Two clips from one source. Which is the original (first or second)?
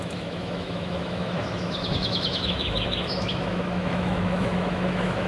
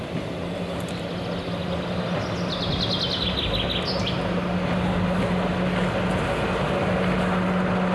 second